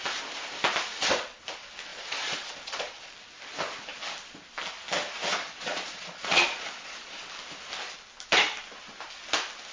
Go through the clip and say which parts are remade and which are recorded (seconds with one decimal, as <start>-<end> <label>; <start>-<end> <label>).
0.0-1.9 recorded; 1.9-3.1 remade; 3.1-5.3 recorded; 5.3-7.2 remade; 7.2-9.7 recorded

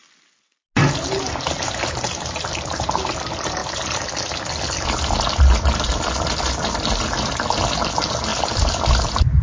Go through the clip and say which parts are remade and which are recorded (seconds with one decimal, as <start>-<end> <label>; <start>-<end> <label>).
0.0-9.4 recorded

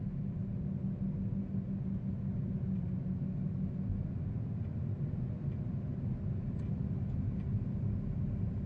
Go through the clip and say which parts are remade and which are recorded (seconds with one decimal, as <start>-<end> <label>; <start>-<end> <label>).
0.0-8.7 recorded

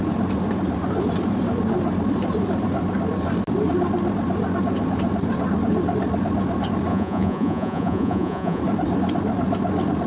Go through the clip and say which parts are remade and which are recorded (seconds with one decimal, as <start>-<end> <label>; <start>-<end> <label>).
0.0-6.9 recorded; 6.9-8.6 remade; 8.6-10.1 recorded